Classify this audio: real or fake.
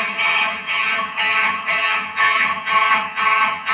fake